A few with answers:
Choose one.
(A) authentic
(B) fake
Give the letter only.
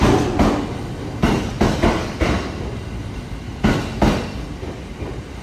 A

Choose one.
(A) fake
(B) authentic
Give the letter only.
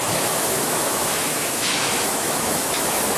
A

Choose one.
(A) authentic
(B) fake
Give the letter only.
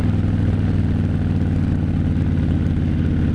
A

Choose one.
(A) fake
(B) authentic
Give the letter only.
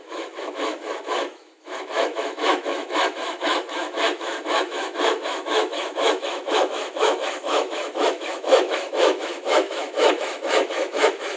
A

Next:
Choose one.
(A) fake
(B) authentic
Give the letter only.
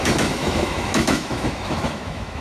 A